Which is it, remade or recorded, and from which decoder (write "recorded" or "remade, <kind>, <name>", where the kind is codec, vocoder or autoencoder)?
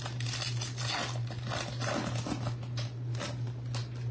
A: recorded